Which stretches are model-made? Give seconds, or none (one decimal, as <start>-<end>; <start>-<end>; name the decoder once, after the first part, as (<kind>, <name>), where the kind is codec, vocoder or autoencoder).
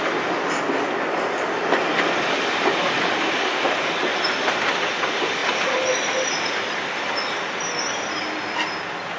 none